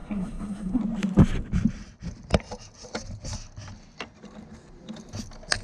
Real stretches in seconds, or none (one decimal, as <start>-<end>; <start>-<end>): 0.8-5.6